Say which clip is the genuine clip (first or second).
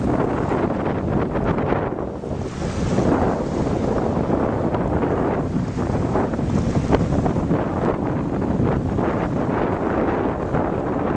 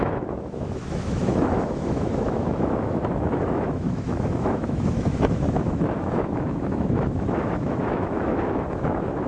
first